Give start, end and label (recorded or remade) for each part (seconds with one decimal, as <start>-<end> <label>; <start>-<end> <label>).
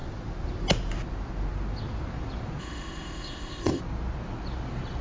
0.0-2.6 recorded; 2.6-3.8 remade; 3.8-5.0 recorded